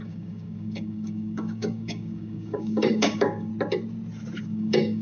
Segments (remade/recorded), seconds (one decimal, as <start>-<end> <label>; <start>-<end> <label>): 0.0-3.5 remade; 3.5-4.4 recorded; 4.4-5.0 remade

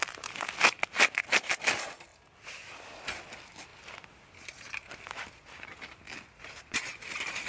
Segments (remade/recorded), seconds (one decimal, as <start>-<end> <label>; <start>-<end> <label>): 0.0-7.5 recorded